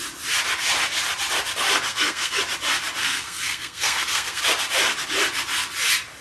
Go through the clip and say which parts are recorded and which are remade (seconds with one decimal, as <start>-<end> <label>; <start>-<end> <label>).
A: 0.0-1.9 recorded; 1.9-2.4 remade; 2.4-3.0 recorded; 3.0-4.4 remade; 4.4-6.2 recorded